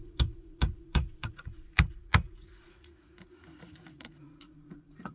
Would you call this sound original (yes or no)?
no